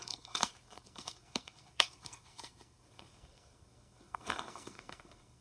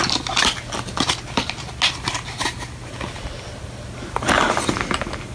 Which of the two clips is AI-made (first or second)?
first